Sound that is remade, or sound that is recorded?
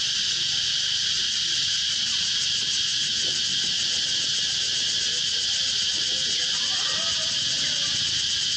recorded